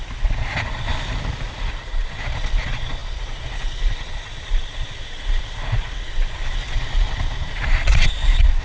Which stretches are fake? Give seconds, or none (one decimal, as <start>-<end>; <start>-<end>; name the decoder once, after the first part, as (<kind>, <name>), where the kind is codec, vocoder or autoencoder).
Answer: 0.0-0.9 (vocoder, Vocos); 1.7-8.6